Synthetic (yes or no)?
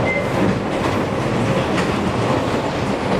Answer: no